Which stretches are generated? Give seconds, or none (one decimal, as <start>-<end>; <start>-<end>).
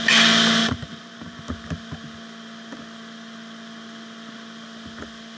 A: 0.6-1.4